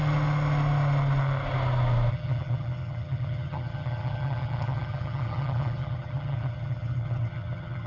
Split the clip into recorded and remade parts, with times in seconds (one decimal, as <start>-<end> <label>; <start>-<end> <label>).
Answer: 0.0-2.1 recorded; 2.1-7.9 remade